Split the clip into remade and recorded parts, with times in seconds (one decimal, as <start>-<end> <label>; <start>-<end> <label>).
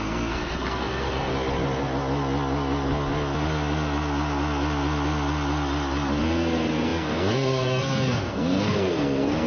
0.0-1.3 remade; 1.3-6.2 recorded; 6.2-9.5 remade